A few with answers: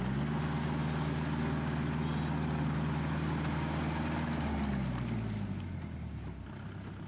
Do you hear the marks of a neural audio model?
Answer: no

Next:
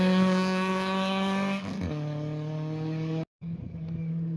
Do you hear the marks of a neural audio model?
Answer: yes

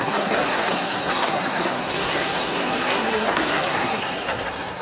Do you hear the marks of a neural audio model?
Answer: yes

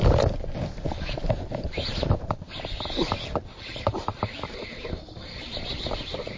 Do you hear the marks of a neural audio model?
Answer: yes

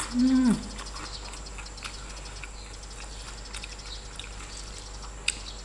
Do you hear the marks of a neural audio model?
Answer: no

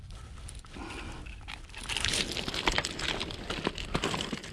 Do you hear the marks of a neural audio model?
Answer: no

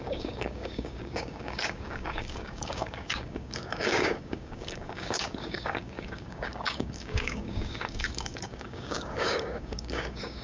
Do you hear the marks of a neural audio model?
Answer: yes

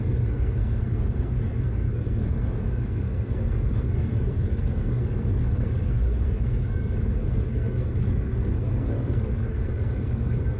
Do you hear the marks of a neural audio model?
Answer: yes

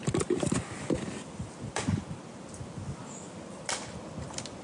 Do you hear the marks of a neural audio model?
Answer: no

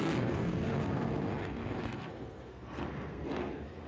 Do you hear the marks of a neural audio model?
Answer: yes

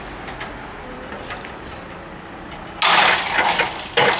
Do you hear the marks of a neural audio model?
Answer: no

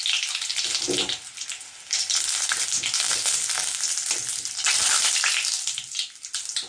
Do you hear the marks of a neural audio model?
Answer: no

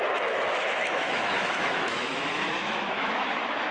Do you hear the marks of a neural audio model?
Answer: yes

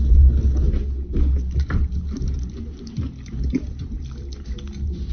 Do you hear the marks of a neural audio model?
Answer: no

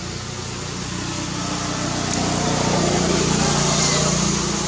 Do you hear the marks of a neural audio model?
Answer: no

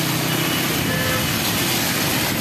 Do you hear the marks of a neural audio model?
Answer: no